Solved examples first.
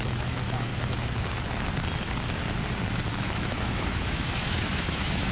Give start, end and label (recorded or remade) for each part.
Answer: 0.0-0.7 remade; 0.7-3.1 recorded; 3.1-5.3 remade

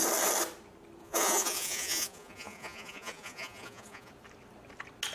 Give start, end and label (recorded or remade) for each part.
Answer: 0.0-1.0 recorded; 1.0-4.1 remade; 4.1-5.1 recorded

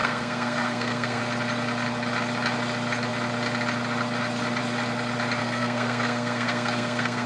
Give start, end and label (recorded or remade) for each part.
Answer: 0.0-1.2 remade; 1.2-5.4 recorded; 5.4-7.3 remade

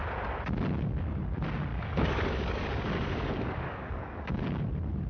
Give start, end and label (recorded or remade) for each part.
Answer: 0.0-1.7 recorded; 1.7-4.6 remade; 4.6-5.1 recorded

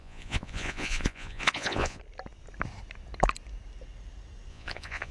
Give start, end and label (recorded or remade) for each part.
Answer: 0.0-2.0 remade; 2.0-4.5 recorded; 4.5-5.1 remade